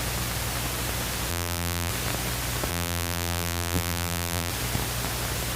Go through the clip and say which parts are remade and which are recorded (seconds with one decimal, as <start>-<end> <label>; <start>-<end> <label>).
0.0-1.3 recorded; 1.3-1.9 remade; 1.9-2.7 recorded; 2.7-4.5 remade; 4.5-5.6 recorded